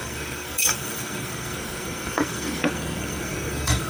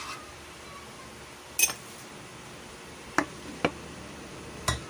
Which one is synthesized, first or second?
first